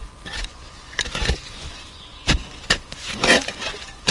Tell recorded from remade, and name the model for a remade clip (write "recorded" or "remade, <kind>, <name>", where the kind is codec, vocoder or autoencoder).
remade, vocoder, Vocos